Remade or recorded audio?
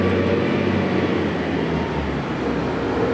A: recorded